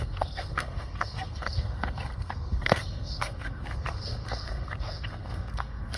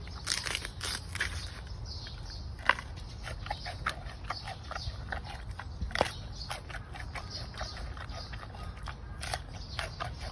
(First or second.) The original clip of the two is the second